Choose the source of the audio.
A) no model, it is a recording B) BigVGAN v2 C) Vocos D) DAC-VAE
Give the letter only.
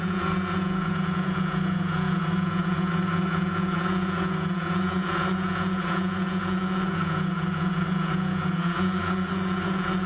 C